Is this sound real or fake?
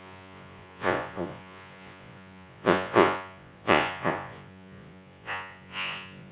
fake